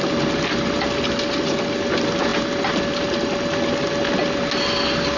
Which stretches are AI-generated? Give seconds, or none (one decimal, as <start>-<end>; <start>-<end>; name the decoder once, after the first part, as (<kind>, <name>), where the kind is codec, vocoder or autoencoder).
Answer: none